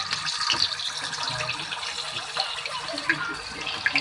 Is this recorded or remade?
recorded